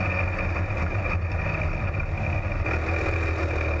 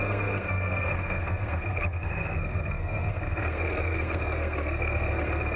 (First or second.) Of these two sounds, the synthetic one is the second